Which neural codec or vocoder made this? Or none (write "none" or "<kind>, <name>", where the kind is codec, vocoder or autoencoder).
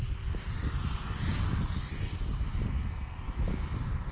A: vocoder, BigVGAN v2